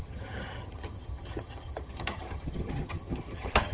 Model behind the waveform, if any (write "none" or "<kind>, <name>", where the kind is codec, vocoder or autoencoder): vocoder, HiFi-GAN